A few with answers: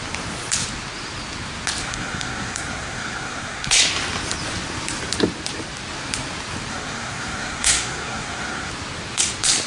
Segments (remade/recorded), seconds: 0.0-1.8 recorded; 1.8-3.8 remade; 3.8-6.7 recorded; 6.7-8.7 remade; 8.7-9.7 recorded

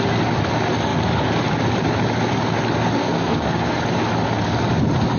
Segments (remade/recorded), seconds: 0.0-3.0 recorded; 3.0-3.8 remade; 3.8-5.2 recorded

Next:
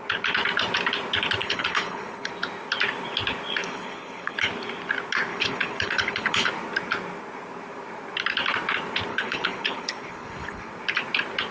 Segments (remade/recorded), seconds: 0.0-1.4 recorded; 1.4-2.3 remade; 2.3-3.6 recorded; 3.6-4.5 remade; 4.5-5.3 recorded; 5.3-6.5 remade; 6.5-9.1 recorded; 9.1-10.7 remade; 10.7-11.5 recorded